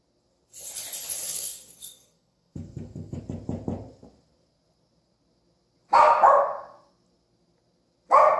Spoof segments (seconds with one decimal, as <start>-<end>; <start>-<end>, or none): 1.2-3.2